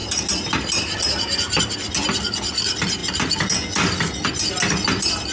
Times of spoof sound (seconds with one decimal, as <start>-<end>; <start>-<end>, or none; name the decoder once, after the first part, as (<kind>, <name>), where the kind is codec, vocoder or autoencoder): none